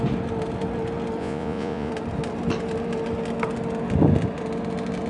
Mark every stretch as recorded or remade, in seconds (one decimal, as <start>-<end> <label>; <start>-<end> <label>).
0.0-1.2 recorded; 1.2-1.9 remade; 1.9-5.1 recorded